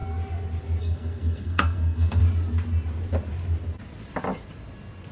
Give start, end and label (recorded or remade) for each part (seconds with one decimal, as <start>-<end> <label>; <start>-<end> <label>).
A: 0.0-0.8 recorded; 0.8-2.2 remade; 2.2-5.1 recorded